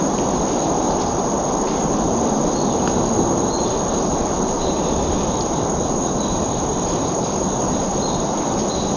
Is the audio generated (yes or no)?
yes